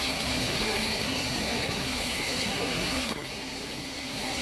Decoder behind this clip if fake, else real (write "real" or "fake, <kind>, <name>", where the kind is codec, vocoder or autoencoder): fake, codec, SNAC